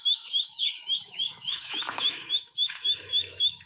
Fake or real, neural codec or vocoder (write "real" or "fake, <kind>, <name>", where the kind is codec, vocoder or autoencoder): fake, autoencoder, DAC-VAE